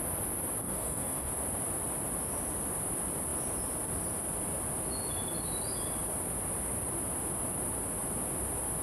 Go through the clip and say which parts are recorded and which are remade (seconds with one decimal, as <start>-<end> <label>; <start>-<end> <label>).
0.0-0.6 recorded; 0.6-1.3 remade; 1.3-8.8 recorded